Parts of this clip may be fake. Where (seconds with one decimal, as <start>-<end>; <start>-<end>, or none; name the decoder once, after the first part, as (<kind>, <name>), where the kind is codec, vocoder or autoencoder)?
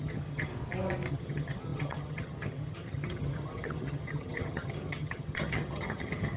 0.0-0.5 (vocoder, HiFi-GAN); 1.1-6.4